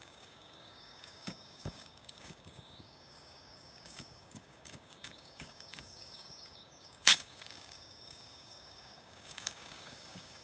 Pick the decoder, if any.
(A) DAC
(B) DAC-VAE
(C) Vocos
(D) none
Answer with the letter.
A